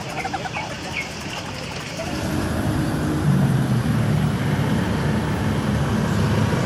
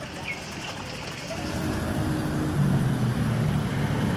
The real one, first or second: second